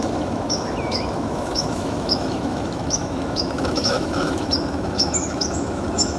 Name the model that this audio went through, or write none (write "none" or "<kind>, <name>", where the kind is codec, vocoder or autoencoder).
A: autoencoder, DAC-VAE